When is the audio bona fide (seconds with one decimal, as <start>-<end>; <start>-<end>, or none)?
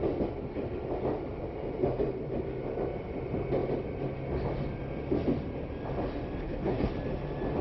0.0-6.4; 6.9-7.6